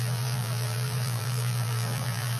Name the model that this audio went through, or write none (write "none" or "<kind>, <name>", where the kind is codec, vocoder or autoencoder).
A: vocoder, BigVGAN v2